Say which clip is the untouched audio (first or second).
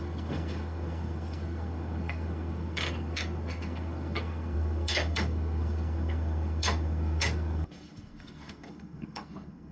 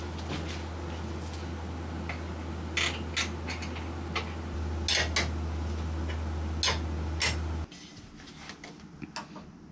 second